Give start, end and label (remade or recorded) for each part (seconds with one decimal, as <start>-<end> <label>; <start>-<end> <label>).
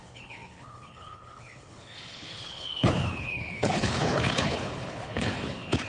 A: 0.0-5.9 remade